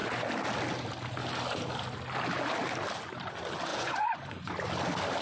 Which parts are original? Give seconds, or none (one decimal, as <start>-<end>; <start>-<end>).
0.0-3.7; 4.5-5.2